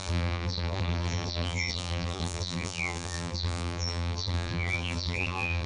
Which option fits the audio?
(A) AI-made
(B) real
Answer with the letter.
A